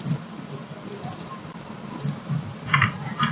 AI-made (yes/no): yes